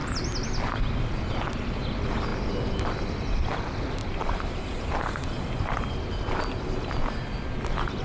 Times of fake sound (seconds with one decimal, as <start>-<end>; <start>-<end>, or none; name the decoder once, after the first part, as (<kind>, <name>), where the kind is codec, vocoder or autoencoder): 4.0-5.9 (vocoder, BigVGAN v2)